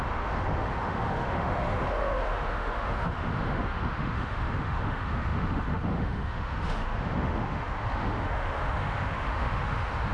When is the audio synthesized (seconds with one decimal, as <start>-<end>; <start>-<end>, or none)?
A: 0.0-10.1